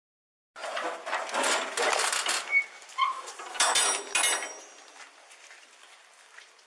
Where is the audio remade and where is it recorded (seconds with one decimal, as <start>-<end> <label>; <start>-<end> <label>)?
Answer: 0.0-6.7 recorded